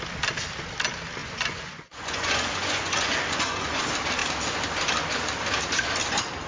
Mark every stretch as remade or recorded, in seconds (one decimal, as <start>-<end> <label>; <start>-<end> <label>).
0.0-1.2 recorded; 1.2-3.8 remade; 3.8-6.5 recorded